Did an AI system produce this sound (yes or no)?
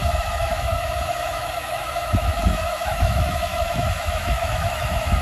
yes